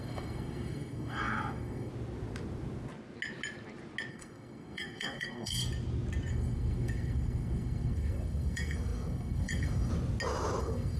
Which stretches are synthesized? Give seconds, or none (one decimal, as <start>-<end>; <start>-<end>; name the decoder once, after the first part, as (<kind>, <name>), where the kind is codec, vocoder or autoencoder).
0.0-1.9 (codec, SNAC); 4.1-5.6; 6.3-9.9; 10.6-11.0